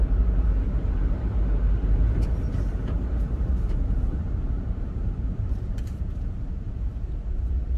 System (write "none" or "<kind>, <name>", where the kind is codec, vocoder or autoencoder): vocoder, BigVGAN v2